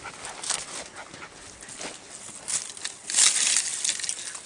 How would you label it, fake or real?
real